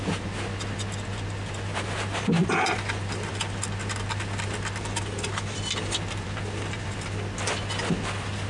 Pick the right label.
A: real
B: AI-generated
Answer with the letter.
A